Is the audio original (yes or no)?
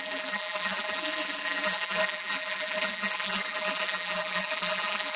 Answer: no